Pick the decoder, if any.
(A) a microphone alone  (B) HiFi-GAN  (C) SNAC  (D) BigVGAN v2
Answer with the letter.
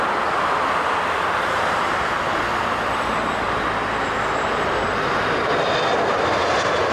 A